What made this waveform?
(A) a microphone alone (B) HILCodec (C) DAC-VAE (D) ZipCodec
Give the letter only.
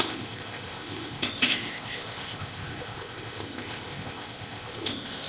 D